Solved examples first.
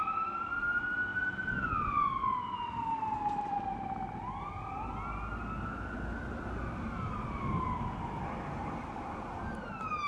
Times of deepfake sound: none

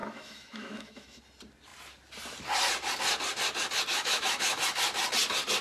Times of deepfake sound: 0.0-1.2 (autoencoder, DAC-VAE); 3.9-4.6

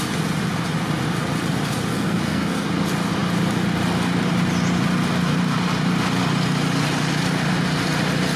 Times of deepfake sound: 1.9-2.7 (codec, SNAC)

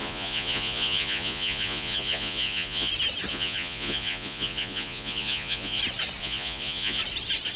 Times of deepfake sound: 0.0-2.9 (vocoder, Vocos); 3.3-5.8; 6.2-7.0

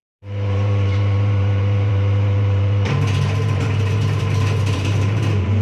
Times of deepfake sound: 0.0-5.6 (vocoder, BigVGAN v2)

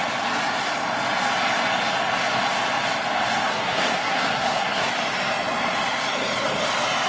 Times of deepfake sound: 3.5-4.9 (codec, SNAC)

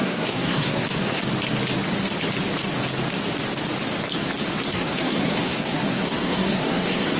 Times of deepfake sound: 0.0-1.2 (codec, SNAC); 4.7-7.2